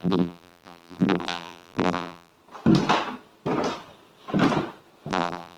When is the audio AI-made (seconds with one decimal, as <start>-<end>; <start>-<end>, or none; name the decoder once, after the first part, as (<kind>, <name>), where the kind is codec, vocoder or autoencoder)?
0.0-2.3 (vocoder, BigVGAN v2); 5.1-5.6